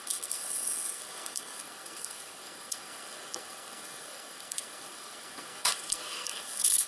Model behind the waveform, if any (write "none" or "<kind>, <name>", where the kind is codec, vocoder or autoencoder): codec, SNAC